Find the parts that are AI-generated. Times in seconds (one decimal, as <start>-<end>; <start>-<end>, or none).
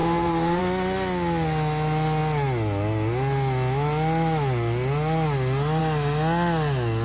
0.0-0.6